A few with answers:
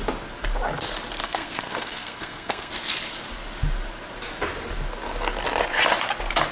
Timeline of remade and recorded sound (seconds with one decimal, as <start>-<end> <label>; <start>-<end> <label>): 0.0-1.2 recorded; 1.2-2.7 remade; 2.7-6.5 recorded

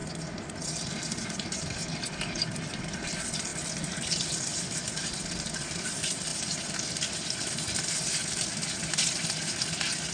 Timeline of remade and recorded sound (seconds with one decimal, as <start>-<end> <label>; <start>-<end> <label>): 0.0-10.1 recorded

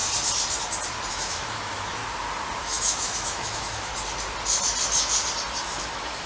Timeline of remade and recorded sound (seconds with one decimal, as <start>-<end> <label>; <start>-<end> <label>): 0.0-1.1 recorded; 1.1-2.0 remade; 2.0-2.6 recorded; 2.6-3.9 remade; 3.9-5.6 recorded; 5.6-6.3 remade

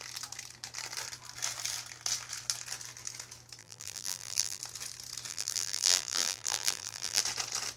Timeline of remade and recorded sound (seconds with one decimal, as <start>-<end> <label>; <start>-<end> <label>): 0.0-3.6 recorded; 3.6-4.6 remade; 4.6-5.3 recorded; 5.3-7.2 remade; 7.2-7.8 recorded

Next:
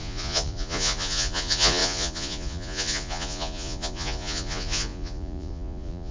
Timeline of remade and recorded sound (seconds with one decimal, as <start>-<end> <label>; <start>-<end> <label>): 0.0-6.1 remade